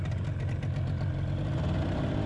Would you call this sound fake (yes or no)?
no